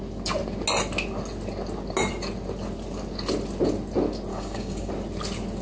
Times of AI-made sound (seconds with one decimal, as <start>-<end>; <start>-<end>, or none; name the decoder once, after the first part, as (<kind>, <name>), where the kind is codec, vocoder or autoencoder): 4.3-4.9 (codec, DAC)